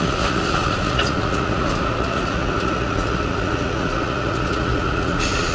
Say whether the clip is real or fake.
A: fake